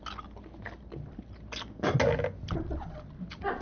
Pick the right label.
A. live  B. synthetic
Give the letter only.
A